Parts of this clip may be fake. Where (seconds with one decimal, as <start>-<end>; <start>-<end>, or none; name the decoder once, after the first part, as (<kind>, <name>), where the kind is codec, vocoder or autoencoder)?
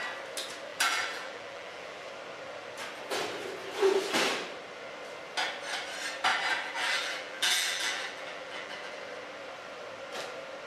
0.7-2.1 (vocoder, BigVGAN v2); 6.3-8.9